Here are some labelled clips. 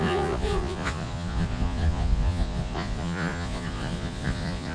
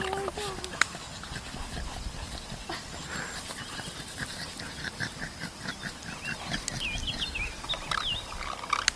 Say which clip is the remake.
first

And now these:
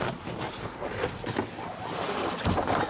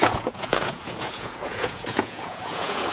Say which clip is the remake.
second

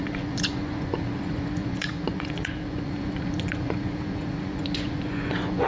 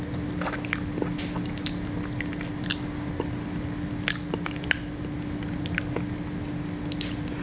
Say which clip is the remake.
first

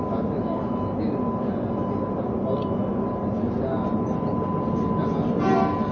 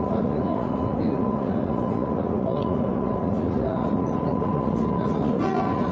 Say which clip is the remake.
second